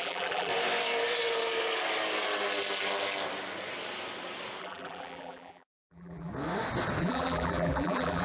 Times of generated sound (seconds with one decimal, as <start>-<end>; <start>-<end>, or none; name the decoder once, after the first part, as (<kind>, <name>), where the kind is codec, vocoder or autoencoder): 0.0-0.5 (vocoder, BigVGAN v2); 4.6-6.3; 7.0-8.2